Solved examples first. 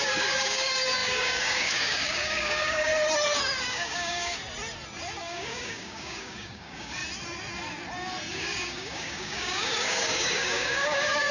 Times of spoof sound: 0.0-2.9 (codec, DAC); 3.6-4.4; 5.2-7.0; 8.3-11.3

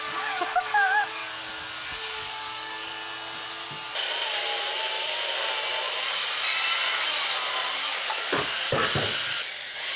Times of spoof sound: 0.0-1.2 (codec, DAC); 2.0-3.0; 7.9-8.8; 9.4-10.0

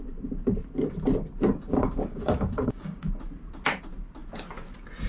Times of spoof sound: 1.5-3.1 (codec, DAC)

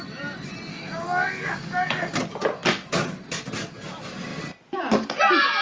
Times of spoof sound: 0.7-2.2 (codec, DAC)

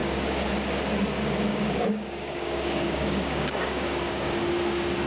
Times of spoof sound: 0.0-0.5 (codec, DAC); 1.5-4.4

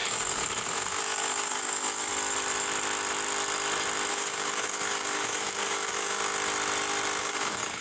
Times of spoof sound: 0.0-2.1 (codec, DAC); 4.1-6.2; 7.2-7.8